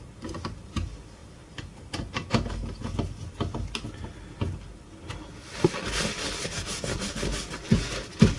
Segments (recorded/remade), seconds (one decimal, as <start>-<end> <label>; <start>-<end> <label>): 0.0-8.4 recorded